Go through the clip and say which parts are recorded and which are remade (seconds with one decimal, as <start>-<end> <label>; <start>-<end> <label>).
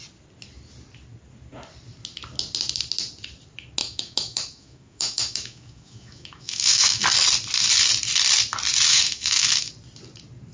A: 0.0-3.8 recorded; 3.8-7.0 remade; 7.0-8.9 recorded; 8.9-9.7 remade; 9.7-10.5 recorded